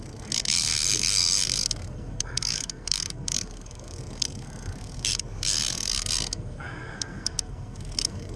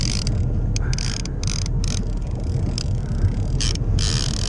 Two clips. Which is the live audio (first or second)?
second